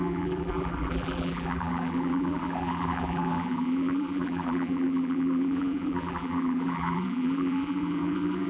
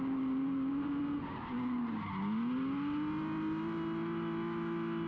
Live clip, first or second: second